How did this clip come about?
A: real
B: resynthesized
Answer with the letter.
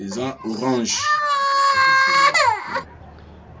A